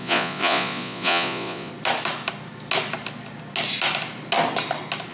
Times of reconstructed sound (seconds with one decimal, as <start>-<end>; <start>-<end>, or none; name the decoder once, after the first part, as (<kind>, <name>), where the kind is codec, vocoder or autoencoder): 0.0-1.7 (vocoder, Vocos)